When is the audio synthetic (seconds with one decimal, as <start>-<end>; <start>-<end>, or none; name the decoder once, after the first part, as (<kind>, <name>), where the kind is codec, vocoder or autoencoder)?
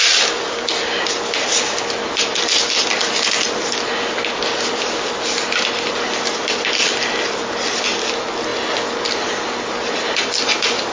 none